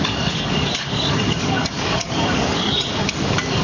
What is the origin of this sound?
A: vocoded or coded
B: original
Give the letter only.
A